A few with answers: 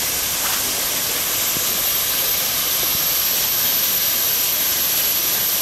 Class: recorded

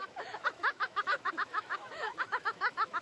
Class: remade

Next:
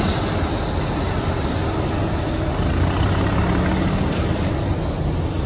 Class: recorded